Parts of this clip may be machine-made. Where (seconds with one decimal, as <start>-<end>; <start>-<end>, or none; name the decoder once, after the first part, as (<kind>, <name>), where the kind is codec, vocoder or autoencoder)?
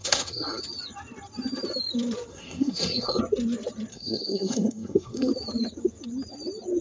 0.0-0.6 (codec, SNAC); 2.3-3.2; 3.9-5.3